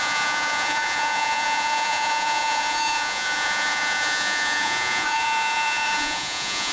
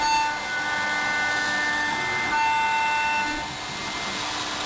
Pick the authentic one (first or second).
second